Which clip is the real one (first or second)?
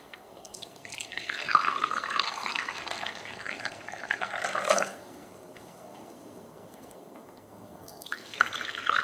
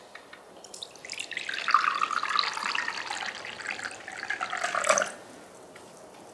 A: second